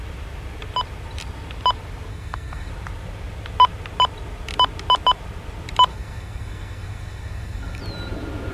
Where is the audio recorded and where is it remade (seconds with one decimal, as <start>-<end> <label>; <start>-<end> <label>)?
0.0-2.1 recorded; 2.1-2.7 remade; 2.7-5.9 recorded; 5.9-7.8 remade; 7.8-8.5 recorded